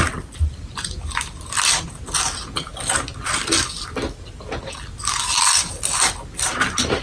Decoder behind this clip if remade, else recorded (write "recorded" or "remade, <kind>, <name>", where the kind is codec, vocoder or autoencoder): recorded